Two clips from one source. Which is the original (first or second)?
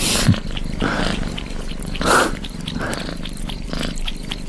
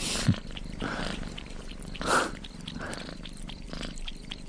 first